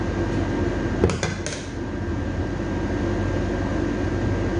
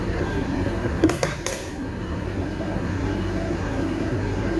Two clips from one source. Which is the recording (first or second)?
first